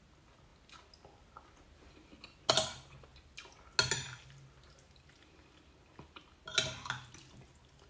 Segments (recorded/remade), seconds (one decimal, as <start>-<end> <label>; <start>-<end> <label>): 0.0-7.9 recorded